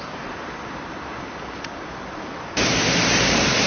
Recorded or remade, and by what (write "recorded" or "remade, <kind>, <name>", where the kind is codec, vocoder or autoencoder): remade, vocoder, BigVGAN v2